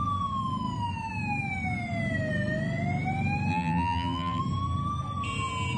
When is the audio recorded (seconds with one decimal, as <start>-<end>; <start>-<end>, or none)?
0.0-3.5; 4.4-5.8